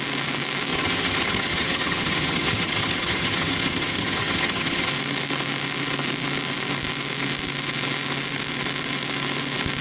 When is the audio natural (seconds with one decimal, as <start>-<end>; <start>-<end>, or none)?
0.0-0.7; 4.9-9.8